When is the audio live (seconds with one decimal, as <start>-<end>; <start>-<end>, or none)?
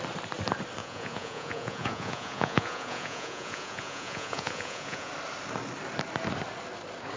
0.0-0.8; 5.1-7.2